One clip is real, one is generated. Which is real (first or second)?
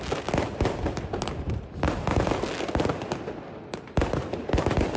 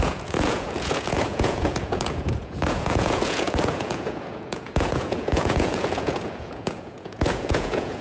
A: first